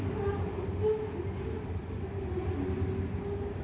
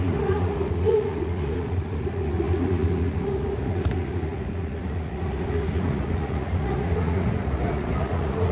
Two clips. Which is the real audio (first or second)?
first